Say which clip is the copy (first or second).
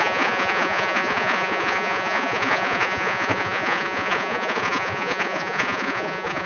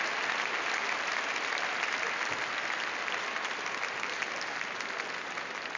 first